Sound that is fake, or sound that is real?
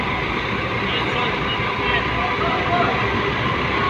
real